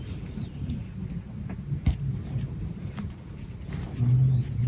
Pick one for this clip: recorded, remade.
recorded